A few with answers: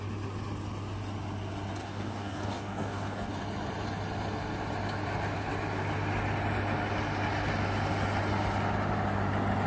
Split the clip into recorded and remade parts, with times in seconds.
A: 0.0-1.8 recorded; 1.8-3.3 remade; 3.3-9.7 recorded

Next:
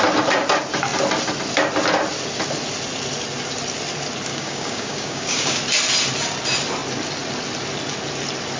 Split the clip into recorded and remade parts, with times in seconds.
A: 0.0-4.3 recorded; 4.3-5.6 remade; 5.6-8.6 recorded

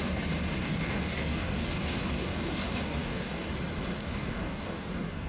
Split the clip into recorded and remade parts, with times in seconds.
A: 0.0-0.6 recorded; 0.6-3.5 remade; 3.5-3.9 recorded; 3.9-5.3 remade

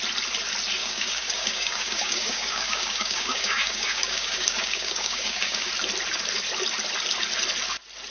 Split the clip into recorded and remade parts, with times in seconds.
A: 0.0-0.8 recorded; 0.8-5.7 remade; 5.7-8.1 recorded

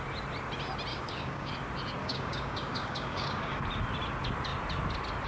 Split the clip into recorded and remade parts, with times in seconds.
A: 0.0-0.9 recorded; 0.9-1.5 remade; 1.5-2.0 recorded; 2.0-3.6 remade; 3.6-5.3 recorded

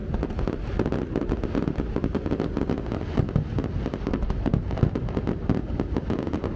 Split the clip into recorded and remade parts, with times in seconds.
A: 0.0-4.0 recorded; 4.0-4.5 remade; 4.5-6.6 recorded